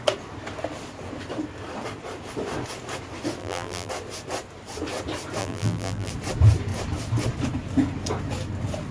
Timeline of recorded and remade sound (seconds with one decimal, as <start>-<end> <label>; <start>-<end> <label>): 0.0-3.4 recorded; 3.4-3.9 remade; 3.9-5.4 recorded; 5.4-6.1 remade; 6.1-8.9 recorded